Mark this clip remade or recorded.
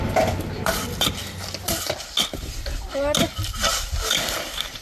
recorded